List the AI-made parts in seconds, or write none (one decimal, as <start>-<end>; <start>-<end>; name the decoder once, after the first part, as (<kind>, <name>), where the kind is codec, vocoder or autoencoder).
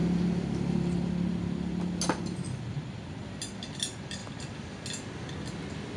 none